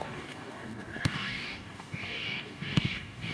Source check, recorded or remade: remade